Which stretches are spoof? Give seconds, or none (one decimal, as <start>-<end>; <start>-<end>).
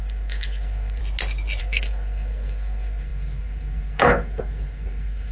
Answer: 0.0-1.0; 1.6-5.3